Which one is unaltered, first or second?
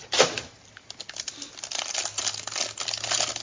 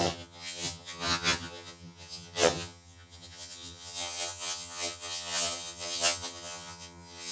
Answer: first